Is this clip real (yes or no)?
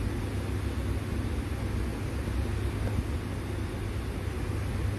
yes